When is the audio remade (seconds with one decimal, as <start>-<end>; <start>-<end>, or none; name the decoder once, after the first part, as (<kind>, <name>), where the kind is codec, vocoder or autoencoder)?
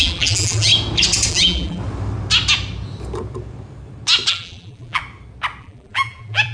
0.0-0.7 (vocoder, BigVGAN v2); 1.3-1.8; 4.3-5.0; 5.6-6.5